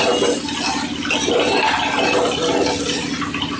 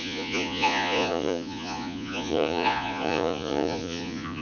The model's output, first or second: second